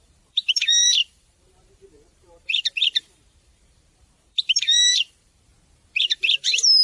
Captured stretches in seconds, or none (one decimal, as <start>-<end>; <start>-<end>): 5.5-6.0